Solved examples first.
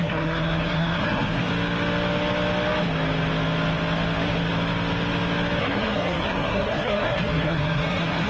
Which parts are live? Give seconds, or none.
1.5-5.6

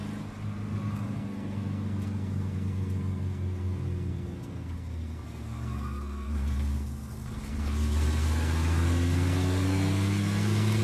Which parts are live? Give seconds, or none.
0.0-0.9

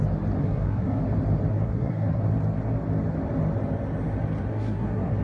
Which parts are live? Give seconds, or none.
0.0-0.4; 1.0-1.5; 2.2-4.5

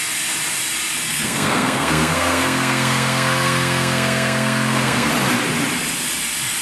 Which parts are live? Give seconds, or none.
0.0-1.1; 5.1-6.6

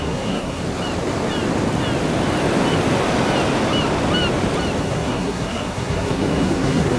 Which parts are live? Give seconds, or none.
0.6-4.8

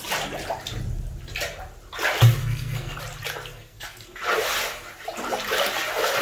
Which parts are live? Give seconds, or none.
0.0-2.4; 3.0-3.5; 4.2-6.2

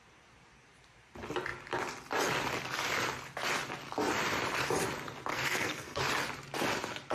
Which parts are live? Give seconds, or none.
0.0-5.3; 6.0-7.1

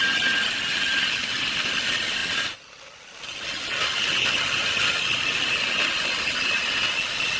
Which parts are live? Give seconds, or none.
0.0-7.4